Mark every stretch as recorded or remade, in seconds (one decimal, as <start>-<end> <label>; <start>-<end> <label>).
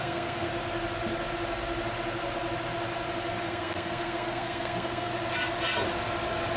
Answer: 0.0-0.5 remade; 0.5-3.4 recorded; 3.4-5.1 remade; 5.1-6.6 recorded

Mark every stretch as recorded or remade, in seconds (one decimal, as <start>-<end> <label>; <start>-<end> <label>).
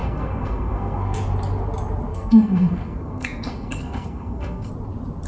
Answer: 0.0-1.2 remade; 1.2-2.1 recorded; 2.1-4.7 remade; 4.7-5.3 recorded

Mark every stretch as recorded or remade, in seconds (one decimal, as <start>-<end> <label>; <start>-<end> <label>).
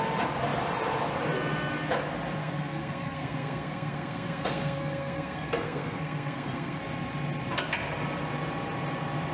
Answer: 0.0-2.4 recorded; 2.4-6.8 remade; 6.8-9.3 recorded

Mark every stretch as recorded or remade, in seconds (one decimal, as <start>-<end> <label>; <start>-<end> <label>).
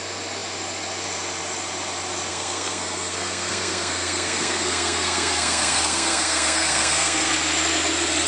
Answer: 0.0-2.3 recorded; 2.3-7.3 remade; 7.3-8.3 recorded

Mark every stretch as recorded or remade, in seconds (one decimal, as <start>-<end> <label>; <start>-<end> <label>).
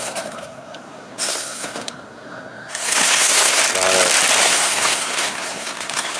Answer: 0.0-3.6 remade; 3.6-4.4 recorded; 4.4-6.2 remade